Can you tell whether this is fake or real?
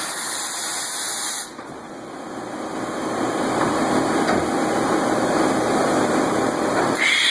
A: real